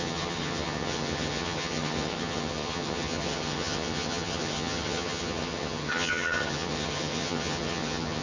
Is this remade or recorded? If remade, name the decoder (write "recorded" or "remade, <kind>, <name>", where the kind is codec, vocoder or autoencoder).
remade, vocoder, HiFi-GAN